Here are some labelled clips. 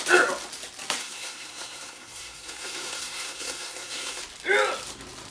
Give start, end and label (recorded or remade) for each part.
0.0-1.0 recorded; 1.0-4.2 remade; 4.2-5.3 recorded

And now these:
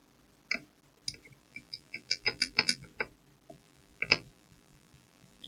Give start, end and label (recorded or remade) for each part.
0.0-1.4 recorded; 1.4-2.9 remade; 2.9-3.5 recorded; 3.5-5.5 remade